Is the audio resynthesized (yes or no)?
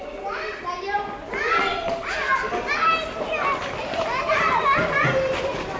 no